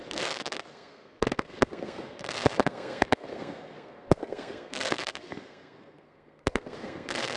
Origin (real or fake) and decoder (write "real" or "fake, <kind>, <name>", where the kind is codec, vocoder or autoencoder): fake, codec, SNAC